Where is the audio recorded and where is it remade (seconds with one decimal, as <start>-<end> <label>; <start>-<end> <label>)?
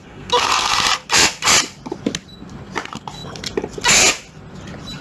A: 0.0-0.7 remade; 0.7-5.0 recorded